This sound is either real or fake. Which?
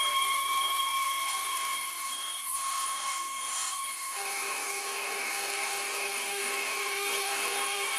fake